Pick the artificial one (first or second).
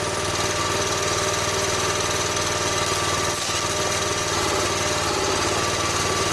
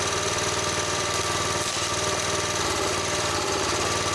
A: second